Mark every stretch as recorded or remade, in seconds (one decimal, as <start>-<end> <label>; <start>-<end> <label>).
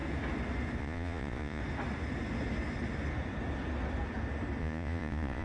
0.0-0.8 recorded; 0.8-1.6 remade; 1.6-4.6 recorded; 4.6-5.4 remade